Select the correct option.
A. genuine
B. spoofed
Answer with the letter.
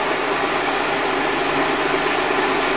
A